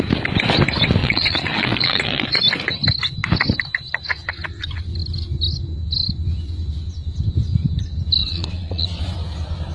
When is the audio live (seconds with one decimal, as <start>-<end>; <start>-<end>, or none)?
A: 0.0-1.0; 2.4-8.2; 9.0-9.7